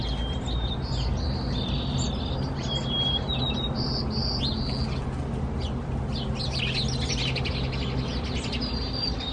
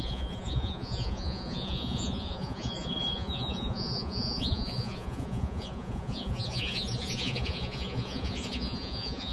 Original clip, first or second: first